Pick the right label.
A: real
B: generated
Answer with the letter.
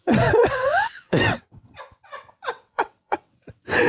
B